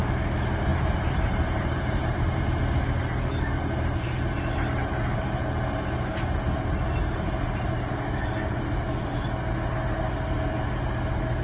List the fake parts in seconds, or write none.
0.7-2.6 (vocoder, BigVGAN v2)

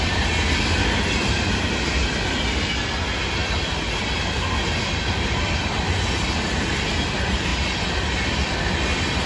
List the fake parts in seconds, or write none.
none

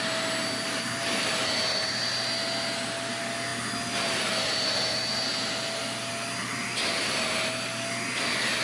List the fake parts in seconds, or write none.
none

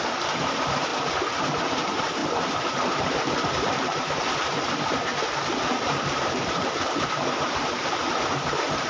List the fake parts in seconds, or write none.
0.0-0.9 (vocoder, BigVGAN v2); 1.4-5.1; 5.9-8.9

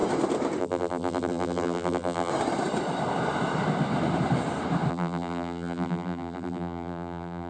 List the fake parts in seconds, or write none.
0.6-2.3 (vocoder, BigVGAN v2); 4.9-7.5

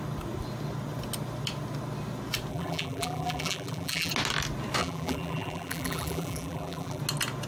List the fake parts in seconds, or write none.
2.5-4.1 (vocoder, BigVGAN v2); 4.8-7.0